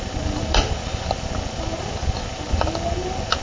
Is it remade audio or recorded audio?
recorded